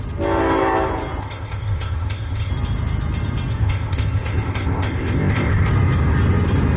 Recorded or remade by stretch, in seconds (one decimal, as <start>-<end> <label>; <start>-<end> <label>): 0.0-1.2 recorded; 1.2-2.5 remade; 2.5-3.5 recorded; 3.5-5.7 remade; 5.7-6.8 recorded